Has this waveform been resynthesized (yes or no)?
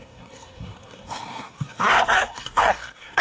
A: yes